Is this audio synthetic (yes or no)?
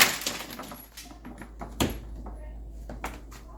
no